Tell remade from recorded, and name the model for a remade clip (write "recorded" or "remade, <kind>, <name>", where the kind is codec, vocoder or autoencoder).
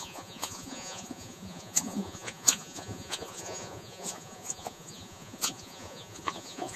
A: remade, vocoder, Vocos